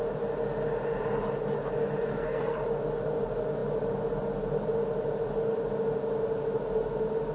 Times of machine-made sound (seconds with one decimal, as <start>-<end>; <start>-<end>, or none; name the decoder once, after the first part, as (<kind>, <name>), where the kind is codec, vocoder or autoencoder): 2.1-2.6 (codec, SNAC)